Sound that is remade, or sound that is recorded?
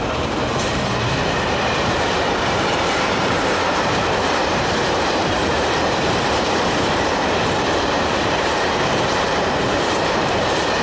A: remade